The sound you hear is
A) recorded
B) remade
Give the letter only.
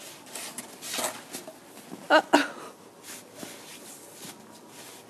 A